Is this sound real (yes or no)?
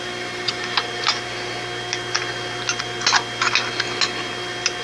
yes